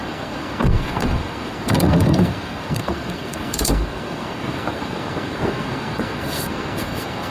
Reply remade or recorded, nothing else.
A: remade